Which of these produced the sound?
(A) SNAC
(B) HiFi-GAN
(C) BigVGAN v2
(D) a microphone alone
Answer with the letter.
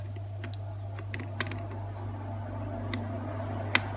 D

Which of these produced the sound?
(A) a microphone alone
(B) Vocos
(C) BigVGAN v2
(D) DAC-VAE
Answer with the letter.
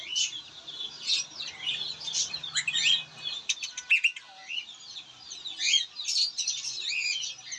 A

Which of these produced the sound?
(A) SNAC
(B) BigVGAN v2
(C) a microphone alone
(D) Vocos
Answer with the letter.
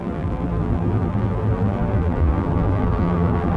B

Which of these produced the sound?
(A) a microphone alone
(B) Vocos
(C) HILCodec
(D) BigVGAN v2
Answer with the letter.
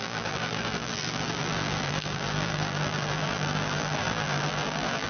D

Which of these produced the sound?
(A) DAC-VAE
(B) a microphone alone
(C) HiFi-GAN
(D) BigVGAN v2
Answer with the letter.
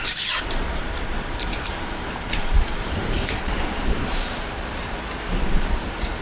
D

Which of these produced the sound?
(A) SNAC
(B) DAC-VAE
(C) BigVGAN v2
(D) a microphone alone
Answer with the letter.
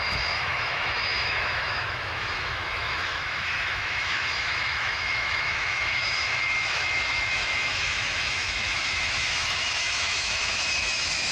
B